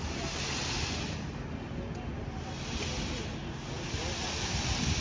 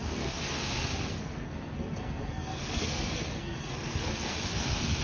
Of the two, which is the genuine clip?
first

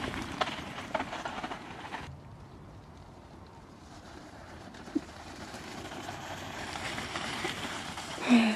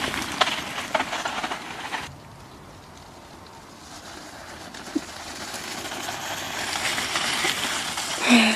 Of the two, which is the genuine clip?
second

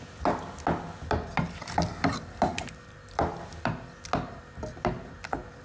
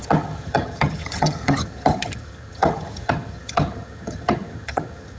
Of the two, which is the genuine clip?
first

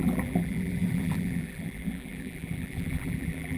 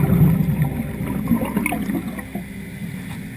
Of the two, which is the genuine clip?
second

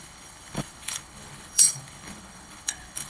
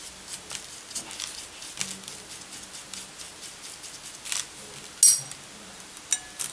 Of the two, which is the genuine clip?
second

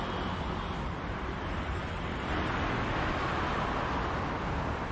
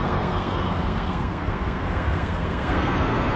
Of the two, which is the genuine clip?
first